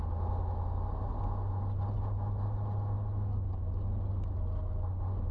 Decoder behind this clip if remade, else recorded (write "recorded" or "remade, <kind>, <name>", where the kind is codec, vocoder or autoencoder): recorded